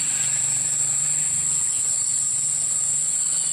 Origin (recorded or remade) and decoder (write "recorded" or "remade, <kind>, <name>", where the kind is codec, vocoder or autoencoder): recorded